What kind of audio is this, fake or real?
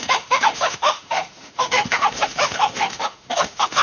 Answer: fake